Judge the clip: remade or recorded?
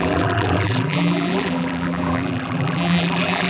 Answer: remade